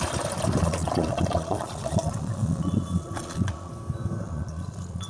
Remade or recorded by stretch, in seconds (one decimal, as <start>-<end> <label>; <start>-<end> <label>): 0.0-0.6 recorded; 0.6-3.7 remade; 3.7-4.2 recorded; 4.2-5.1 remade